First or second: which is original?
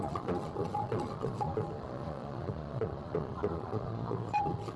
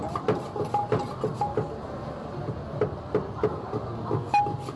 second